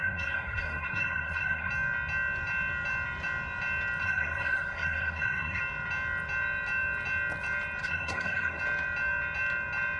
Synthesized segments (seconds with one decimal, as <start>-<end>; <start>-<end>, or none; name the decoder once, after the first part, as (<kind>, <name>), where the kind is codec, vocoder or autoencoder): 0.0-1.7 (codec, SNAC); 4.0-5.6; 7.8-8.6